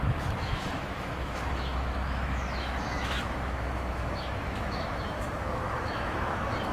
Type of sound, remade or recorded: remade